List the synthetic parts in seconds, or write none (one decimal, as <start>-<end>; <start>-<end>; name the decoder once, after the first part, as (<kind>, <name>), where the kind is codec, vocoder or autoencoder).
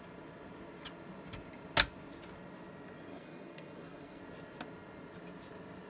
3.1-4.2 (codec, SNAC)